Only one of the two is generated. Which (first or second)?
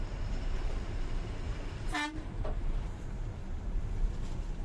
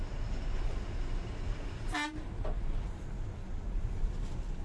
first